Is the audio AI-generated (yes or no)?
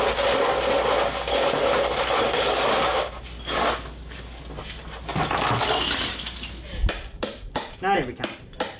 no